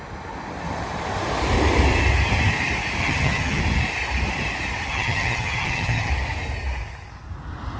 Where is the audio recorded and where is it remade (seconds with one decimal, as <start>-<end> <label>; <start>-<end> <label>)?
0.0-3.0 recorded; 3.0-3.6 remade; 3.6-4.9 recorded; 4.9-6.1 remade; 6.1-7.8 recorded